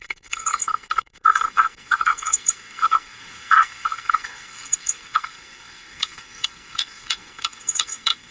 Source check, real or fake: fake